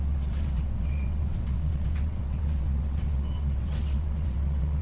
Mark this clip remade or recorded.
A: remade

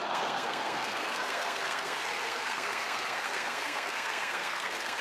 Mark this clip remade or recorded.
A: remade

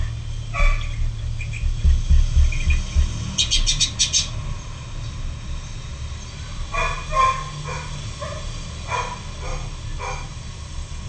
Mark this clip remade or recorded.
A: recorded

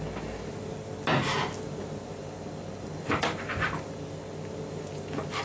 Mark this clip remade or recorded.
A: recorded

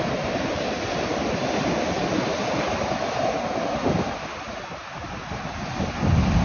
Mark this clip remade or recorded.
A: recorded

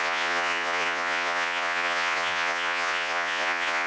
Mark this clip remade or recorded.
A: remade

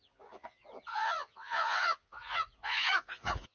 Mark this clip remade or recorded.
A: remade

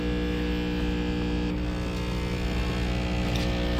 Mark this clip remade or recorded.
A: recorded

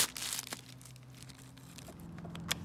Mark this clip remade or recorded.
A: recorded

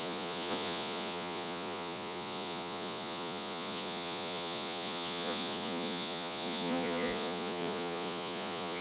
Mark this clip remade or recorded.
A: remade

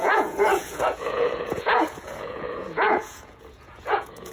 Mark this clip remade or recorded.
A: remade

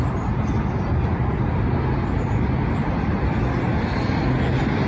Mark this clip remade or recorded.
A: recorded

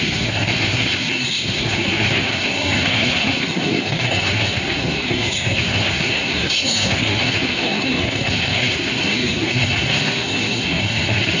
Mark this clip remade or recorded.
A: remade